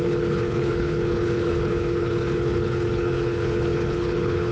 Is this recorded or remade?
remade